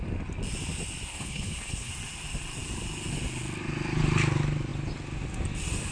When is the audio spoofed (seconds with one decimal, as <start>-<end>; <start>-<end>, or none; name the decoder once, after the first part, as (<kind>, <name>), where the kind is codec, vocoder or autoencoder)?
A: 1.1-1.9 (codec, HILCodec)